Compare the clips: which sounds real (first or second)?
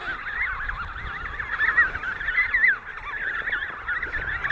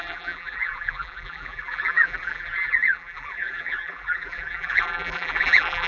first